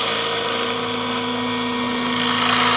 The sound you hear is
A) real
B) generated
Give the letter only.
A